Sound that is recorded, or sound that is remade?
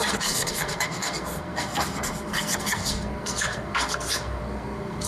remade